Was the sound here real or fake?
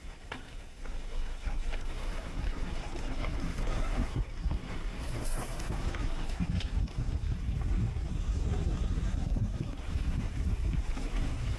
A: fake